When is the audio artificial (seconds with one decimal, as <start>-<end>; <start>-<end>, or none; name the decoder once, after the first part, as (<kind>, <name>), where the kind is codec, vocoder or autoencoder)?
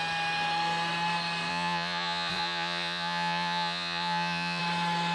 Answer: 1.5-4.6 (vocoder, Vocos)